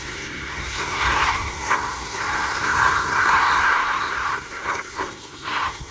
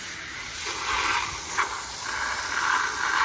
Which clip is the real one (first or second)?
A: second